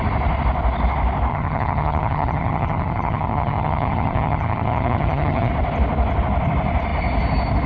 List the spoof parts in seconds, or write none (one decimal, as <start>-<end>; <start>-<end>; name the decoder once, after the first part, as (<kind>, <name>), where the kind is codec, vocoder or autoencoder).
1.3-5.5 (vocoder, HiFi-GAN)